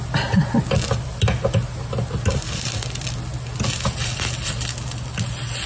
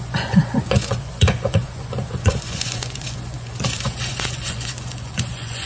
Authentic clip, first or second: first